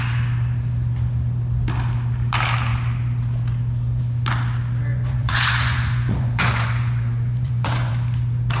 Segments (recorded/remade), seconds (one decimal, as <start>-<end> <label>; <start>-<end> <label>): 0.0-4.9 recorded; 4.9-7.9 remade; 7.9-8.6 recorded